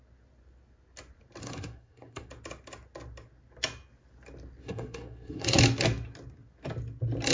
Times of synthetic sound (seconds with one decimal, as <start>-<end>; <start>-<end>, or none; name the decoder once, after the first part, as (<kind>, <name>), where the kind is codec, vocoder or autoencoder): 1.4-2.3 (codec, SNAC); 4.6-5.6